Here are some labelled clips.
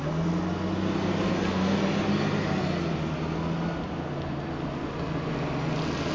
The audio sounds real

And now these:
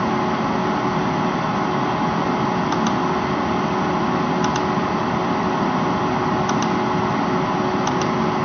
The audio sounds real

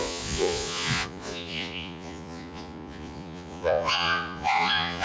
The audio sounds fake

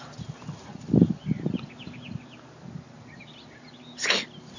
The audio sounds real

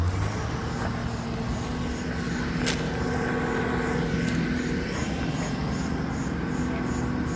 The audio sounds real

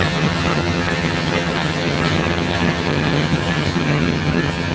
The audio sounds fake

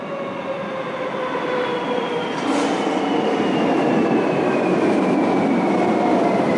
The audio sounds real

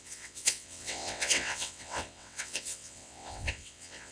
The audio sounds fake